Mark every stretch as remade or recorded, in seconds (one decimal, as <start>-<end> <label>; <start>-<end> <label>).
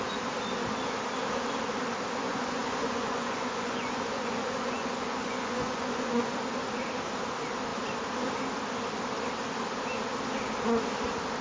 0.0-2.2 recorded; 2.2-6.3 remade; 6.3-11.4 recorded